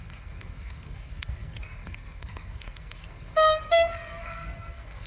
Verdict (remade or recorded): remade